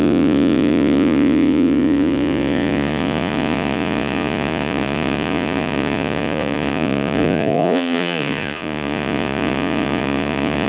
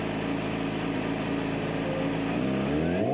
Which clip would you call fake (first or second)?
first